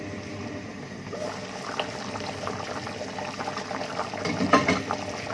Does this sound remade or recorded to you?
recorded